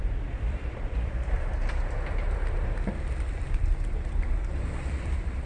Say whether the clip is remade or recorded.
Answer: remade